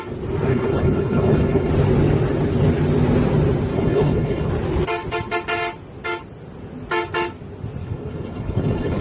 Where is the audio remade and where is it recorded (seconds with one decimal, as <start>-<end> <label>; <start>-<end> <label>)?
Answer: 0.0-0.5 recorded; 0.5-1.7 remade; 1.7-3.7 recorded; 3.7-4.5 remade; 4.5-7.8 recorded; 7.8-9.0 remade